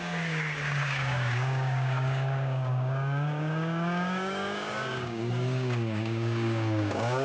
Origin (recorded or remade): remade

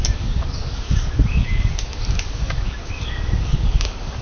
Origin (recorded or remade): remade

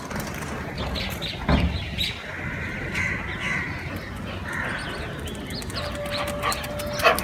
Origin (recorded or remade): recorded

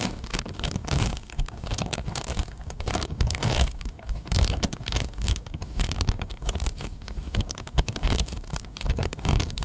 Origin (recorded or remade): remade